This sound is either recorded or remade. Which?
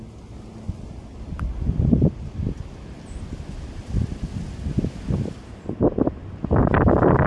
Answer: recorded